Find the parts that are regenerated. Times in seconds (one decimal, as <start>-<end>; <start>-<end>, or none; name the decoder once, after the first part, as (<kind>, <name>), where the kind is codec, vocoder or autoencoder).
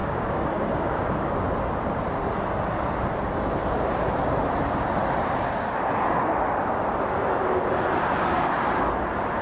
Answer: 0.0-1.3 (codec, DAC)